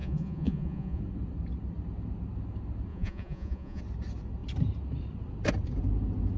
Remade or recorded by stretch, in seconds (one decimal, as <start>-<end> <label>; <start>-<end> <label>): 0.0-1.0 remade; 1.0-2.9 recorded; 2.9-3.8 remade; 3.8-6.4 recorded